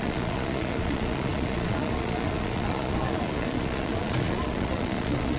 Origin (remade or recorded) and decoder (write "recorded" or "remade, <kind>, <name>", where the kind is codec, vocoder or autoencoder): remade, vocoder, Vocos